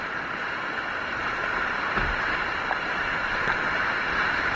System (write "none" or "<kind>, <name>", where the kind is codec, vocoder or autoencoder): vocoder, BigVGAN v2